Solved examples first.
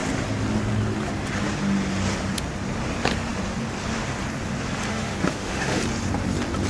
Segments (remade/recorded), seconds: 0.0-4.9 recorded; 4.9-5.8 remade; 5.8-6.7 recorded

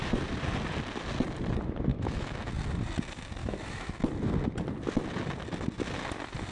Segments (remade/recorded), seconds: 0.0-1.9 recorded; 1.9-2.5 remade; 2.5-3.4 recorded; 3.4-3.9 remade; 3.9-6.5 recorded